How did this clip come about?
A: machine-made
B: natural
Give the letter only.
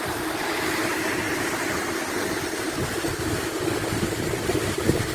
B